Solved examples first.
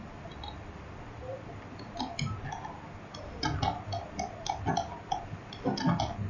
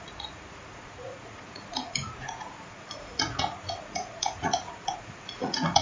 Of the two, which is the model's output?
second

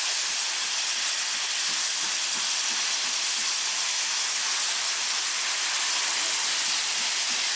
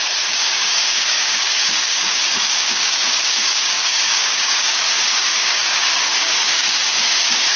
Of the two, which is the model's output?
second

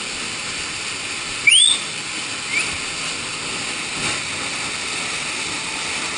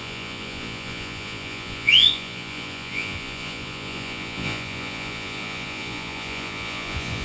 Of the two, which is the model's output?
second